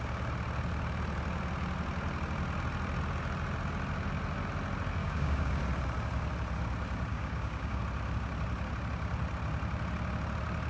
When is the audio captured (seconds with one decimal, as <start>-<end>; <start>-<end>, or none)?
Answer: 0.0-5.0; 5.5-7.1; 7.8-10.7